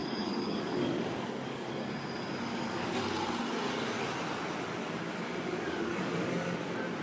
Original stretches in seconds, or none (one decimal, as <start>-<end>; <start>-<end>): 1.7-2.5; 3.0-4.8; 6.6-7.0